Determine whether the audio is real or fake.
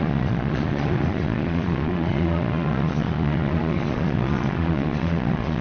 fake